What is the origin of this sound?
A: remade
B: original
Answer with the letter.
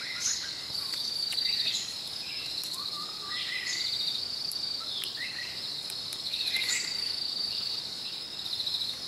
A